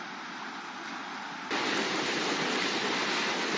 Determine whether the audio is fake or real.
real